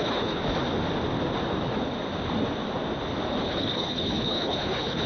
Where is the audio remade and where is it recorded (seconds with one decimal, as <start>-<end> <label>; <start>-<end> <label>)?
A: 0.0-0.4 remade; 0.4-3.5 recorded; 3.5-5.1 remade